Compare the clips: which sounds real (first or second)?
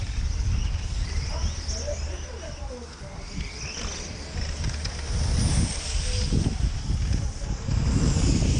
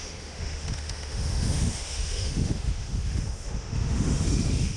first